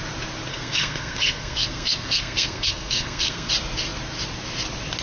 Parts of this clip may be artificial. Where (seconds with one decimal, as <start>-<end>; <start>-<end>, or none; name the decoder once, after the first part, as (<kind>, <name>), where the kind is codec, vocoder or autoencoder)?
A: 0.5-3.5 (codec, SNAC)